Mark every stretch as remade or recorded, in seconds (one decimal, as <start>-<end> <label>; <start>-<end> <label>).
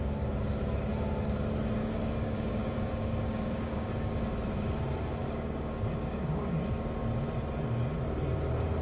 0.0-1.8 recorded; 1.8-3.9 remade; 3.9-5.2 recorded; 5.2-6.6 remade; 6.6-8.8 recorded